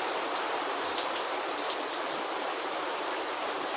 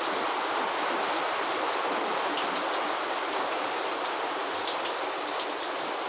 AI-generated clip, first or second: first